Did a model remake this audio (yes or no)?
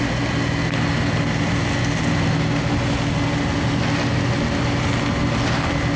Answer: no